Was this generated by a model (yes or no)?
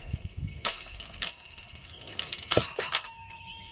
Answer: yes